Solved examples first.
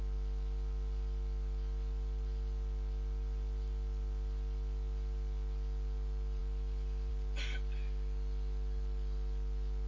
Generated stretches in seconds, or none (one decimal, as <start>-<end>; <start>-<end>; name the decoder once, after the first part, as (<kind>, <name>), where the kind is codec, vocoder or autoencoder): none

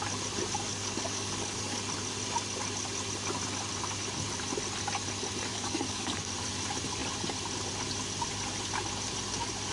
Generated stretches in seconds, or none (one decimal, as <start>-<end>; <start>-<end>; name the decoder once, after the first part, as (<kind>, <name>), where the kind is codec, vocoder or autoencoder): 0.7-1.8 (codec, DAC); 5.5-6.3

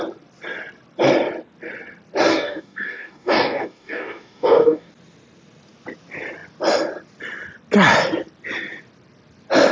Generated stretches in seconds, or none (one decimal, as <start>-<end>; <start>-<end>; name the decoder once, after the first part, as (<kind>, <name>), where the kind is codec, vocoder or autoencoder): 2.3-4.9 (codec, DAC)

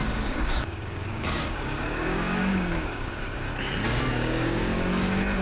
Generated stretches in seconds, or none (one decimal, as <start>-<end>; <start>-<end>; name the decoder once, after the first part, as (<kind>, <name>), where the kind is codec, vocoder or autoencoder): 0.0-3.5 (codec, DAC); 4.1-5.4

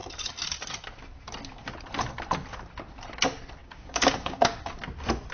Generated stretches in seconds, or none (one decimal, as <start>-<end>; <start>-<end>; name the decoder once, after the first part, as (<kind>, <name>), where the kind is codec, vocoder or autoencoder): 3.6-4.7 (codec, DAC)

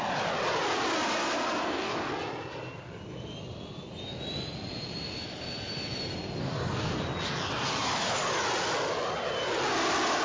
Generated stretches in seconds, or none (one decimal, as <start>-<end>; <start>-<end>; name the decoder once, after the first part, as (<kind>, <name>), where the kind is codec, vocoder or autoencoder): 1.6-2.1 (codec, DAC); 6.4-7.0

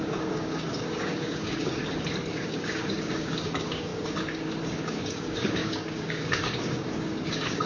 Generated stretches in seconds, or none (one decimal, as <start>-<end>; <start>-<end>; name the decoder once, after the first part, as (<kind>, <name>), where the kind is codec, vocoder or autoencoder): 0.0-1.8 (codec, DAC); 2.3-7.7